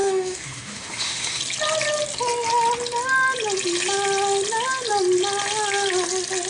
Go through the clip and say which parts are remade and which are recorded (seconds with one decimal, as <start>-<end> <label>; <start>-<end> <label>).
0.0-1.4 remade; 1.4-6.5 recorded